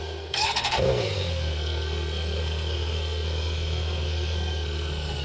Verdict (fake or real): fake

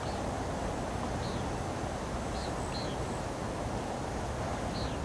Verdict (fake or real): real